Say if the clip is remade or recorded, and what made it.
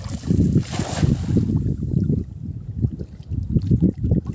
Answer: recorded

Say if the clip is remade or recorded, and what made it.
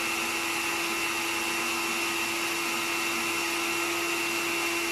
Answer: recorded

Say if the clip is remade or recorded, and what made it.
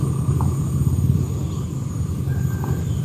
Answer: recorded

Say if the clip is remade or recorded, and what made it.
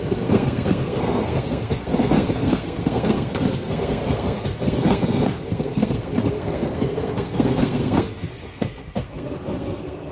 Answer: remade, codec, SNAC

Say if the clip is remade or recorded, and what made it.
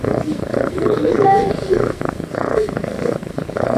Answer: remade, codec, SNAC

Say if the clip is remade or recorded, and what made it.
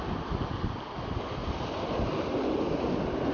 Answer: recorded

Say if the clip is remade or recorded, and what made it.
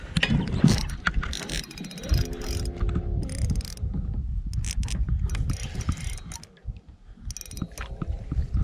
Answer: recorded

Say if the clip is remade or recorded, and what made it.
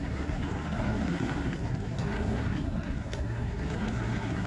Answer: remade, codec, SNAC